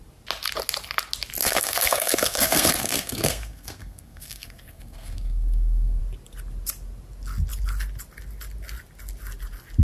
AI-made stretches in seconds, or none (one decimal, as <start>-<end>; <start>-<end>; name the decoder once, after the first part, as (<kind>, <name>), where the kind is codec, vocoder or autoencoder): 1.4-6.0 (codec, SNAC)